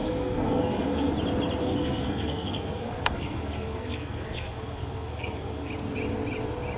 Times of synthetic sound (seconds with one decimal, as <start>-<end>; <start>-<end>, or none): 0.0-1.1; 1.6-5.7